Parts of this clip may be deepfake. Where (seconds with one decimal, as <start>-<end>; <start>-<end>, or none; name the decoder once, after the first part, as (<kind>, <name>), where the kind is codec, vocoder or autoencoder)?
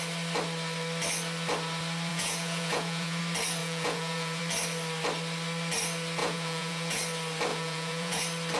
2.1-3.2 (vocoder, Vocos); 3.6-4.4; 6.2-7.0; 7.5-8.2